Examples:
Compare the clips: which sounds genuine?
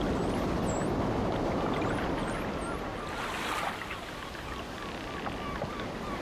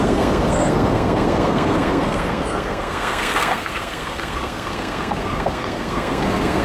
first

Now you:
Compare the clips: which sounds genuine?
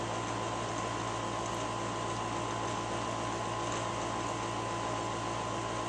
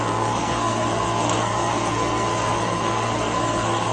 first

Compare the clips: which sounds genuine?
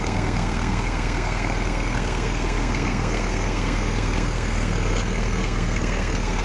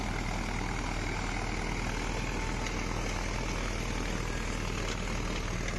second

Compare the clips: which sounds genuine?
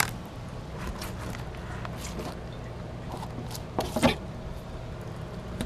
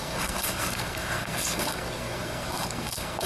first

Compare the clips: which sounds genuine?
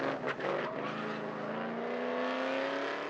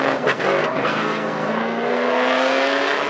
first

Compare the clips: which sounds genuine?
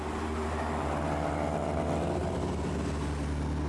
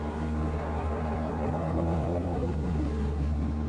first